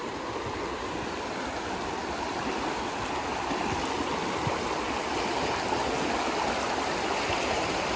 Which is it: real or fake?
real